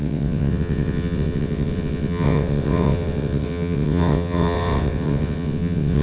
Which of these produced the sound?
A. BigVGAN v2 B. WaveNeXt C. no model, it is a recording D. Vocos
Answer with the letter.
B